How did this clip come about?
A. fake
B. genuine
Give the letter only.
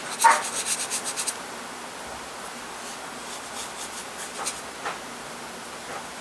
B